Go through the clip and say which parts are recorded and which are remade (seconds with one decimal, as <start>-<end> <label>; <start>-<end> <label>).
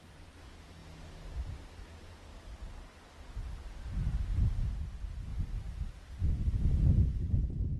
0.0-0.8 remade; 0.8-1.3 recorded; 1.3-2.3 remade; 2.3-3.8 recorded; 3.8-5.3 remade; 5.3-6.3 recorded; 6.3-7.8 remade